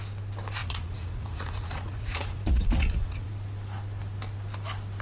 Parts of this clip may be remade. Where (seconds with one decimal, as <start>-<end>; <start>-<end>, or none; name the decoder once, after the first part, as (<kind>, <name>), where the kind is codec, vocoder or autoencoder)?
0.6-3.3 (vocoder, Vocos)